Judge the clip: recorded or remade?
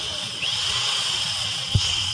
remade